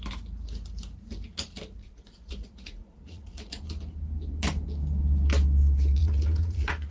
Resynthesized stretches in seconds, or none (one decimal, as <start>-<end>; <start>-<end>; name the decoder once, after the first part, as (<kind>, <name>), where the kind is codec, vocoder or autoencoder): 1.8-3.6 (vocoder, Vocos); 6.0-6.9